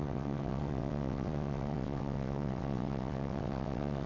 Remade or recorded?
remade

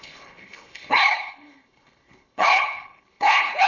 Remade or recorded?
remade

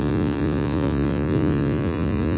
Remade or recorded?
remade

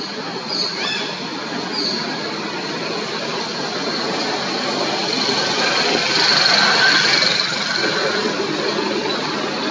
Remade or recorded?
recorded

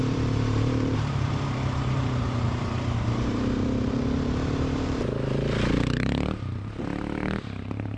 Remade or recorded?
remade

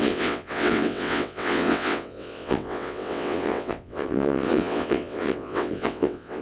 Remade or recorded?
remade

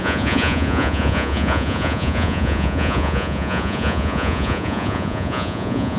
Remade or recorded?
remade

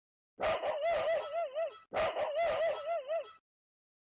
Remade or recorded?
recorded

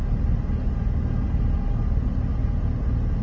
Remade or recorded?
recorded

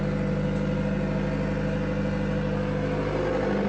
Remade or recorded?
recorded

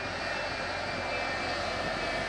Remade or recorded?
recorded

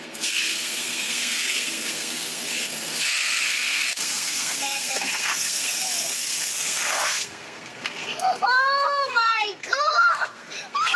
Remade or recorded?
remade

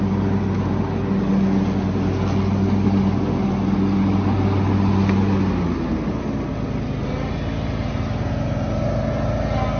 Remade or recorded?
recorded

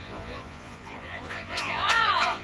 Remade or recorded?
remade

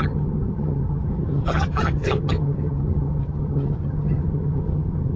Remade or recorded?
remade